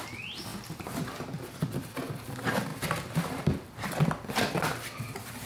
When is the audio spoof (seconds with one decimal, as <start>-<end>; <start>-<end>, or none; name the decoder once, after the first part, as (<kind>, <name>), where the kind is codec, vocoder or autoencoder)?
2.7-4.6 (vocoder, BigVGAN v2)